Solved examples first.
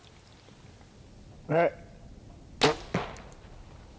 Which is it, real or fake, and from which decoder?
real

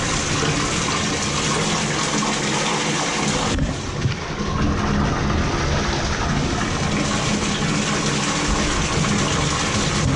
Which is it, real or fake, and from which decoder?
real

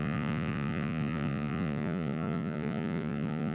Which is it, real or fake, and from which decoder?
fake, vocoder, Vocos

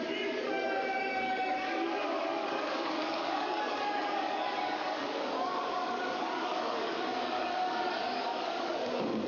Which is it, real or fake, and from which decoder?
fake, codec, DAC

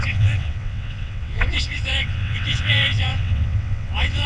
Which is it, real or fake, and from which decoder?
fake, vocoder, WaveNeXt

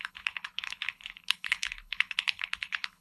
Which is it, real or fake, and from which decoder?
fake, codec, HILCodec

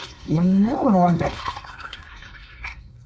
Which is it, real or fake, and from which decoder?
fake, codec, SNAC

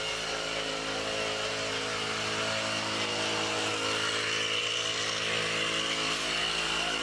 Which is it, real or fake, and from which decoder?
real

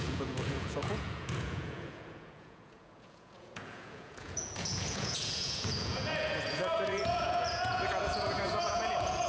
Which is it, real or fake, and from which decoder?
fake, vocoder, Vocos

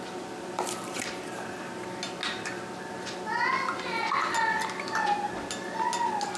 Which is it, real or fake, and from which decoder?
real